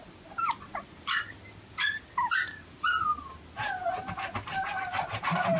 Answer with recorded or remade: recorded